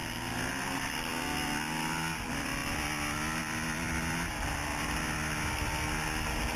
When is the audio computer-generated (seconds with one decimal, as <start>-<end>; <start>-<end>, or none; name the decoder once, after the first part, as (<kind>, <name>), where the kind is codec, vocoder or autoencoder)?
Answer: 0.5-1.1 (vocoder, BigVGAN v2); 2.2-2.6; 3.4-4.7